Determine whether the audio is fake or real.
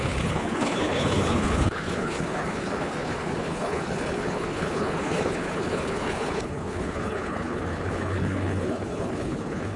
fake